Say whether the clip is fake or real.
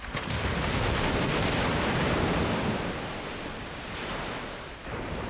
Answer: real